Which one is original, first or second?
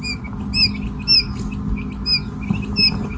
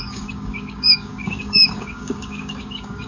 first